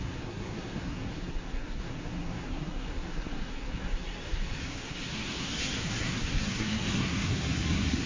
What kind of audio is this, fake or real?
fake